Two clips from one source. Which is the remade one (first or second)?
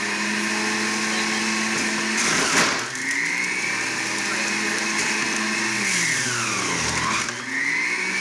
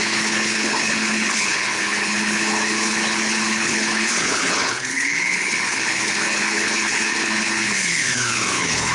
second